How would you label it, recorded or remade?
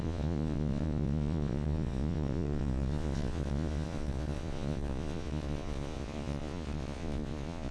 remade